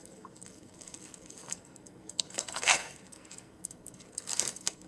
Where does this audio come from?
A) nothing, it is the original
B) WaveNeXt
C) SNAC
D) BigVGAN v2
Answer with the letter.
C